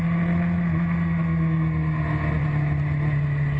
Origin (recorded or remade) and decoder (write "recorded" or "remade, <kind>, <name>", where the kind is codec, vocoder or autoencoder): recorded